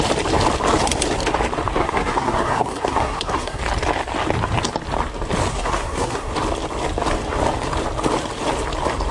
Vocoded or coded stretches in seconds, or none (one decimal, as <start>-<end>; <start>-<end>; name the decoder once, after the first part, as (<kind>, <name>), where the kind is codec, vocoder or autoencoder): 1.8-3.6 (codec, SNAC); 5.5-6.3